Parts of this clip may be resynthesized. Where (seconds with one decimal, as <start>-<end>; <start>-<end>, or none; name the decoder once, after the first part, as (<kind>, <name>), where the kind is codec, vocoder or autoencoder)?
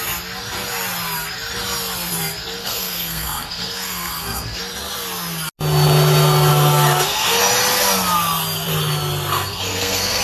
2.6-4.6 (codec, SNAC); 6.5-7.4; 9.3-10.2